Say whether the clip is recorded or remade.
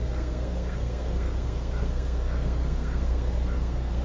remade